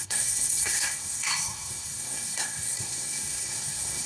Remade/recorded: remade